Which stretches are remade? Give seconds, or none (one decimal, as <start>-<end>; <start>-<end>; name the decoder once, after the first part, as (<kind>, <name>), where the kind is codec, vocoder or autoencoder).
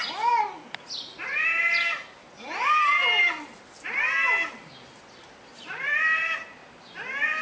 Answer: none